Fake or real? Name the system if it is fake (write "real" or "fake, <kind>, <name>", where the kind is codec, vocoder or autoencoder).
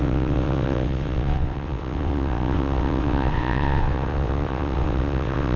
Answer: fake, vocoder, WaveNeXt